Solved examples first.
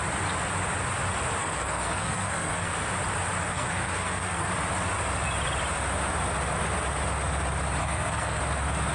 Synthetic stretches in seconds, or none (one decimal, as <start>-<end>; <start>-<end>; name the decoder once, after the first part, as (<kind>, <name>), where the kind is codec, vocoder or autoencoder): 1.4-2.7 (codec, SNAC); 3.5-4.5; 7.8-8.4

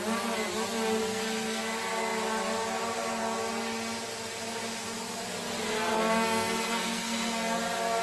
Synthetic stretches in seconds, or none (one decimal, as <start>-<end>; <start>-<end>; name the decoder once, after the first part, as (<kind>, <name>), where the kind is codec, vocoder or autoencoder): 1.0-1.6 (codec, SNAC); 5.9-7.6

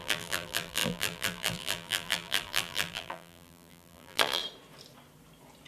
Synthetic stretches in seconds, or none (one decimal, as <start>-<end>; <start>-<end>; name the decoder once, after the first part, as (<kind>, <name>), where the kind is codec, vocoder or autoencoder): 0.0-4.4 (vocoder, BigVGAN v2)

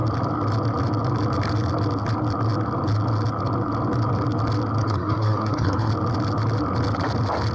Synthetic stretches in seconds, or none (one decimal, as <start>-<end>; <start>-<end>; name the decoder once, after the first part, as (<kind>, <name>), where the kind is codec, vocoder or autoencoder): 4.8-5.9 (codec, SNAC)

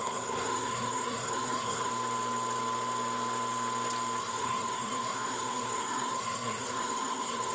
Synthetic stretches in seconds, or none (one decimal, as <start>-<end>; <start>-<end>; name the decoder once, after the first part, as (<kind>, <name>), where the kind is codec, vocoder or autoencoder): 0.0-1.9 (codec, SNAC); 4.2-7.5

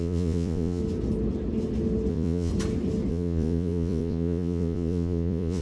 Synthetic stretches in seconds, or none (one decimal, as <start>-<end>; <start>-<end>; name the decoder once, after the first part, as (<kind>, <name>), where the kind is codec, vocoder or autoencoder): 0.0-0.8 (vocoder, Vocos); 2.1-2.5; 3.1-5.6

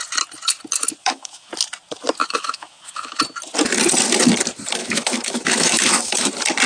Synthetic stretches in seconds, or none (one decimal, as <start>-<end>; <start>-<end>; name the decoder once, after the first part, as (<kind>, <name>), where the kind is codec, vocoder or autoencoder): 1.0-1.5 (autoencoder, DAC-VAE); 2.2-3.2; 4.8-6.3